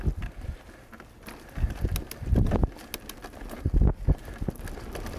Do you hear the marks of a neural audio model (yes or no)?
no